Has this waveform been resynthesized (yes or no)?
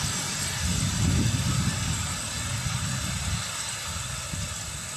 no